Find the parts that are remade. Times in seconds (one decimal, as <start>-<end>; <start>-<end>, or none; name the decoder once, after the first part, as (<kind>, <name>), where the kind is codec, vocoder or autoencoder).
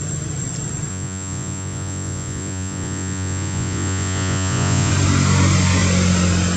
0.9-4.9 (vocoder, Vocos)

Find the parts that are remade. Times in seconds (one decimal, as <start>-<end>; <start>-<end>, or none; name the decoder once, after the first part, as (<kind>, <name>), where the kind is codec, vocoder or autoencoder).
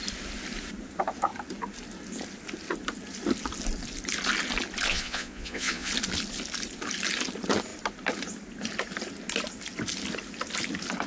4.9-5.9 (vocoder, Vocos)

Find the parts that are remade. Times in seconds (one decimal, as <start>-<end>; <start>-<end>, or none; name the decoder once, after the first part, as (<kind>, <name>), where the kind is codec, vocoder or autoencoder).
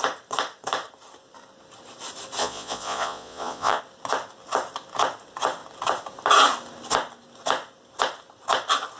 2.4-3.8 (vocoder, Vocos)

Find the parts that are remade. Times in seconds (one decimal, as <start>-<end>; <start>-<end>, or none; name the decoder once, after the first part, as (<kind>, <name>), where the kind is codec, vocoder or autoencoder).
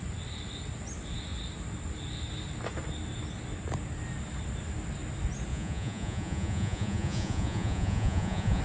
5.5-8.6 (vocoder, Vocos)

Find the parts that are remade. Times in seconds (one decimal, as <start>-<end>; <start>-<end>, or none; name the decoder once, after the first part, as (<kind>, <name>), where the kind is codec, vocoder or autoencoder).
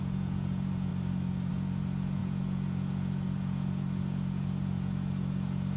0.0-0.9 (vocoder, Vocos); 1.5-5.8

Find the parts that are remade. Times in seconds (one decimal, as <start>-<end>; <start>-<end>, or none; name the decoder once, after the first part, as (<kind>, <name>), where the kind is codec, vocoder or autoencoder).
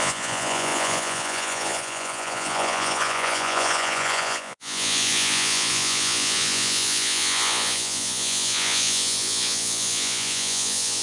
0.0-11.0 (vocoder, Vocos)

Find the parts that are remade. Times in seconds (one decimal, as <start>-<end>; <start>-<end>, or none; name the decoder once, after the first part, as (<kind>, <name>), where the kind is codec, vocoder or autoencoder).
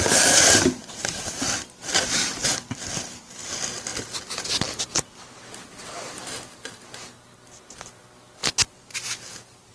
none